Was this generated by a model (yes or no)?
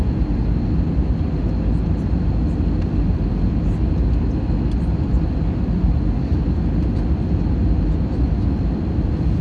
no